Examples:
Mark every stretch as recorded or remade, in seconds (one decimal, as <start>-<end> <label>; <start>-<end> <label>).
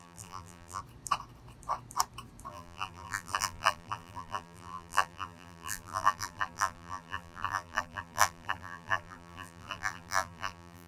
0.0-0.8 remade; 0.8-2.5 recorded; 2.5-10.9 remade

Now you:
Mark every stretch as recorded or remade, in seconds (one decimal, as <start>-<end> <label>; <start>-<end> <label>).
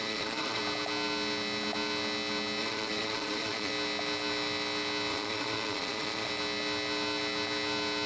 0.0-0.6 remade; 0.6-2.6 recorded; 2.6-3.7 remade; 3.7-5.1 recorded; 5.1-6.3 remade; 6.3-8.1 recorded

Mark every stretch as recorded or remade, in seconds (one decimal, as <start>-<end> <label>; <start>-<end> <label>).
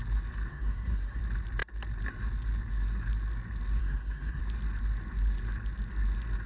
0.0-0.5 recorded; 0.5-1.2 remade; 1.2-3.8 recorded; 3.8-4.4 remade; 4.4-6.5 recorded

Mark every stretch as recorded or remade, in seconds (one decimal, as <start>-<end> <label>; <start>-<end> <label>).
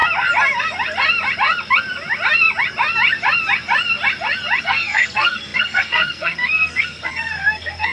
0.0-4.6 recorded; 4.6-7.9 remade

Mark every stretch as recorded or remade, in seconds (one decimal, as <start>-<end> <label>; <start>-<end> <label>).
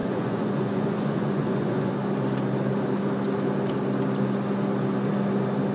0.0-1.9 remade; 1.9-5.7 recorded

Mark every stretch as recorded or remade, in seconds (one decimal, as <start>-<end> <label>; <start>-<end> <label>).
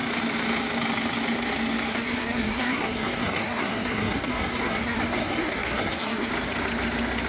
0.0-1.9 recorded; 1.9-6.3 remade; 6.3-7.3 recorded